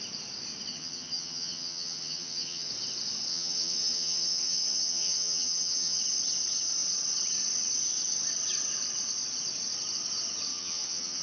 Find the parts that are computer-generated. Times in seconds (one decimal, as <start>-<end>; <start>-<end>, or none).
0.7-2.7; 3.3-6.0; 10.5-11.2